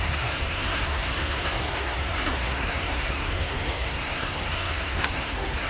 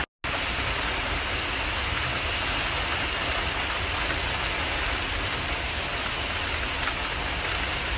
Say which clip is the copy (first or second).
first